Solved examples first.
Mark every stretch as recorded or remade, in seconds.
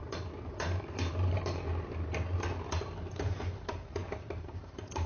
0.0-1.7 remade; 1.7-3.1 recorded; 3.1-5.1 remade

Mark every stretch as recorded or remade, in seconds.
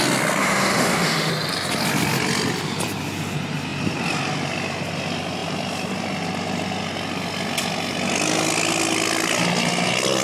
0.0-0.4 recorded; 0.4-1.3 remade; 1.3-10.2 recorded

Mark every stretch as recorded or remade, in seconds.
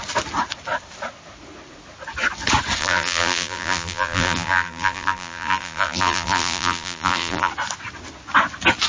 0.0-2.8 recorded; 2.8-7.5 remade; 7.5-8.9 recorded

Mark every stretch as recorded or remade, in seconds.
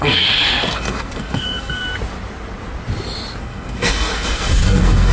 0.0-1.8 remade; 1.8-3.4 recorded; 3.4-5.1 remade